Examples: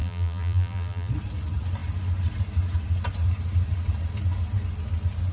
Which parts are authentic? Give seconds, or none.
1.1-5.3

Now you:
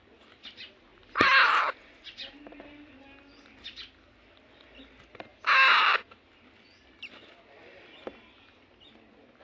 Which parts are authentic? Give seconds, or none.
0.0-9.4

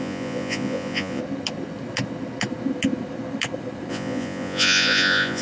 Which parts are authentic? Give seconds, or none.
1.2-3.9

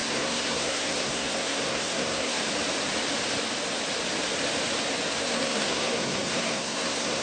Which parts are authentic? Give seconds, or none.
2.4-5.2